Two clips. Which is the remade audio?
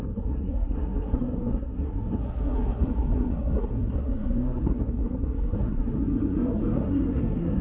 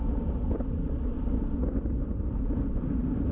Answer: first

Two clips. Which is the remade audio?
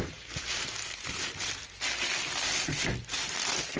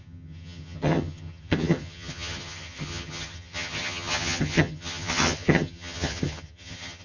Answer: second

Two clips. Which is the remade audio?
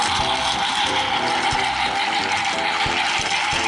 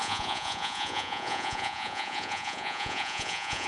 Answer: second